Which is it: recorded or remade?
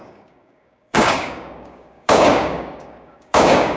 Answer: remade